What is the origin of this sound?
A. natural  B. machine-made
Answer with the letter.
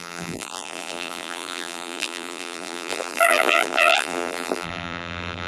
B